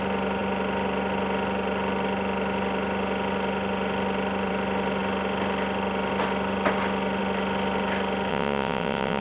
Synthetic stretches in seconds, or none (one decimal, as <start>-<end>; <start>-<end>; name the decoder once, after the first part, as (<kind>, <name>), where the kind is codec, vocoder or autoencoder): 8.3-9.2 (vocoder, WaveNeXt)